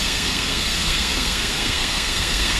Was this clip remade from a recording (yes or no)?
yes